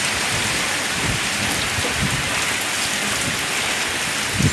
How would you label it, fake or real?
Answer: real